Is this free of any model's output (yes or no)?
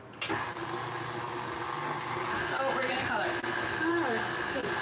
yes